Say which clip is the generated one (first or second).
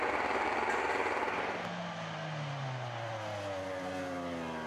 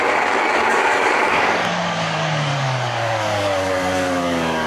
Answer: second